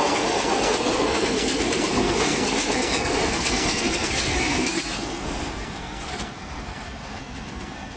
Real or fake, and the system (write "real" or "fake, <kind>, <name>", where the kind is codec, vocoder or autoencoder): fake, codec, SNAC